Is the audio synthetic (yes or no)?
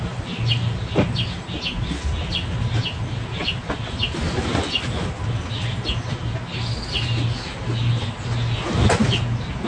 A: no